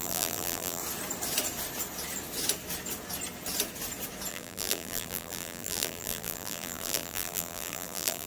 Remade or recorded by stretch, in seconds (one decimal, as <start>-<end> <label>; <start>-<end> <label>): 0.0-0.8 remade; 0.8-4.3 recorded; 4.3-8.3 remade